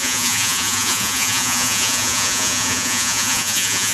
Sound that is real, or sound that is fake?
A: fake